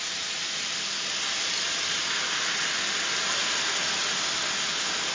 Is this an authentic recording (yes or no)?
yes